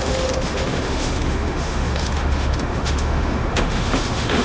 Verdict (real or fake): fake